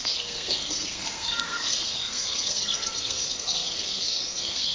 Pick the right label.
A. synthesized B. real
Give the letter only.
A